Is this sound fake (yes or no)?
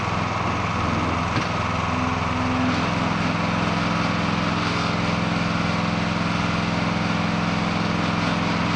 no